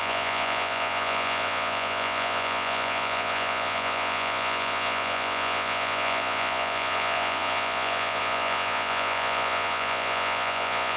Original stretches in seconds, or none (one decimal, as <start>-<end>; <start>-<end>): none